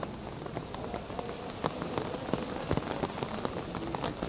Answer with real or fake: real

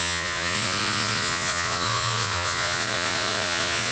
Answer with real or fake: fake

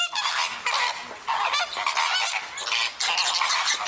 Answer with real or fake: real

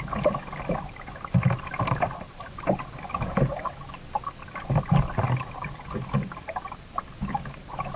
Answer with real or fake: real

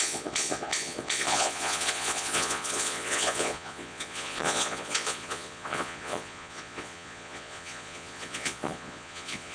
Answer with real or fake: fake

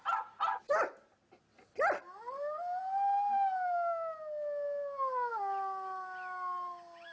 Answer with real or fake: real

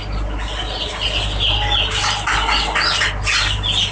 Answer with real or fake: real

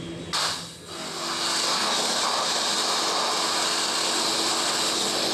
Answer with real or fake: real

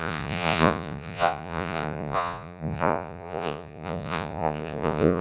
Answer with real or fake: fake